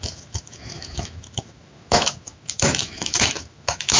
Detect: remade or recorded remade